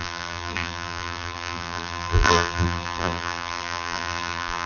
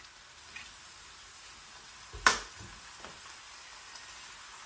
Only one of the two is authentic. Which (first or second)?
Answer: second